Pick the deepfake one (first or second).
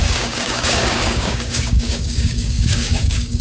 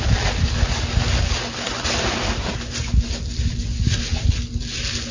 first